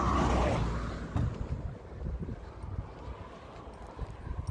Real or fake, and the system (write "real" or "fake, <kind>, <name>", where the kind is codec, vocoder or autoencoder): real